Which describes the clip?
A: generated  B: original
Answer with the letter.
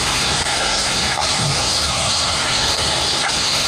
A